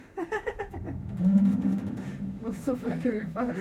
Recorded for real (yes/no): no